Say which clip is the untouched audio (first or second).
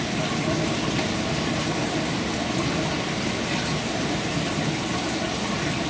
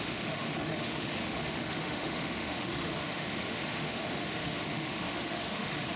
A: first